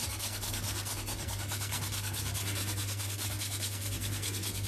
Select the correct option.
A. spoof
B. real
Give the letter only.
A